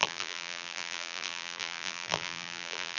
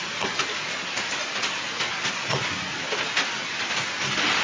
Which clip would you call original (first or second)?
second